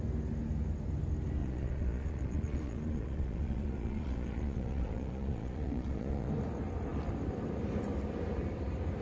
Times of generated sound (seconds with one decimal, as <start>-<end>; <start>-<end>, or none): 1.4-6.3